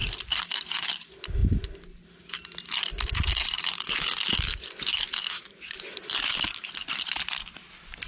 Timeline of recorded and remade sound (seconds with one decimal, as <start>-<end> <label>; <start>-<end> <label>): 0.0-8.1 recorded